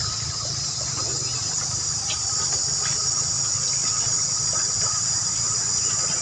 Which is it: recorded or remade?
recorded